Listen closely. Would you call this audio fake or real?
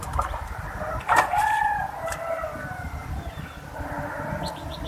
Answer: real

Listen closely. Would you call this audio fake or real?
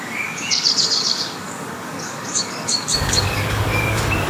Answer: fake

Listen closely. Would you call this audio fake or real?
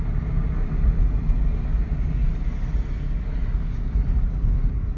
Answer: real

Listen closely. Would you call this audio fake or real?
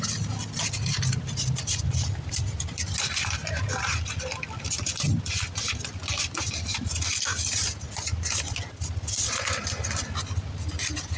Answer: real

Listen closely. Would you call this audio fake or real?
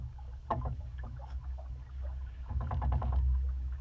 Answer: fake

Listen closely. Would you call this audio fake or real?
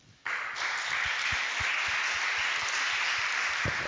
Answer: real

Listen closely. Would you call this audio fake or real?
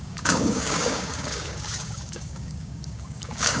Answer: fake